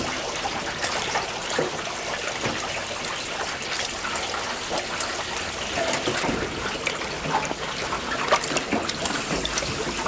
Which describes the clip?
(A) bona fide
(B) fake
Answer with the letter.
A